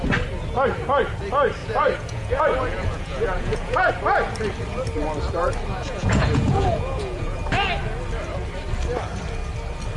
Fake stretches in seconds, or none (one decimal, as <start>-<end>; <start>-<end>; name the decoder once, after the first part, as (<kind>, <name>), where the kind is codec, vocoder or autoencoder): 1.6-3.9 (vocoder, Vocos); 5.7-7.4